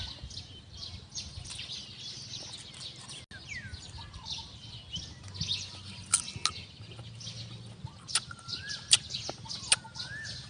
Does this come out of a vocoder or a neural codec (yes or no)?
no